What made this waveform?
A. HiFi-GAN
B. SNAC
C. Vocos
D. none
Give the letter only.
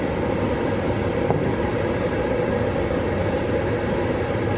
D